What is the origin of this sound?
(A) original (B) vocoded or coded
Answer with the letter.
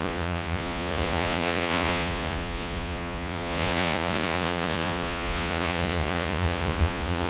B